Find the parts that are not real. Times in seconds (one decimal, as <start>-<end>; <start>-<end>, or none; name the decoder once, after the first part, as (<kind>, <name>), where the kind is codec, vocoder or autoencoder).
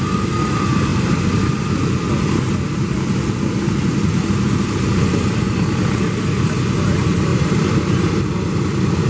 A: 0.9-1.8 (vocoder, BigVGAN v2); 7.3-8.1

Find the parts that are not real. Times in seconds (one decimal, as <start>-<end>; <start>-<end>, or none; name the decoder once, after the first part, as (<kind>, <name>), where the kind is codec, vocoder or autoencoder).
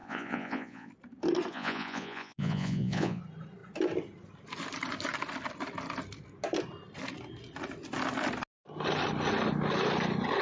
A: 0.0-0.9 (vocoder, Vocos); 1.5-3.2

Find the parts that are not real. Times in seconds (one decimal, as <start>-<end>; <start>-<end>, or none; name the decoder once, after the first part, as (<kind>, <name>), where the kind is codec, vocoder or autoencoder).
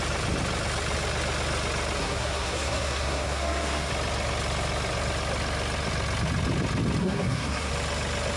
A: 2.0-3.9 (codec, SNAC); 7.0-7.7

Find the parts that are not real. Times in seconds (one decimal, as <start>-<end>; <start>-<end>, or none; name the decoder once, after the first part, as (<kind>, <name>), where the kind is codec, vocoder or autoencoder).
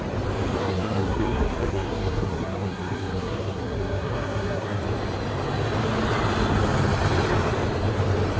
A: 0.6-4.8 (codec, SNAC)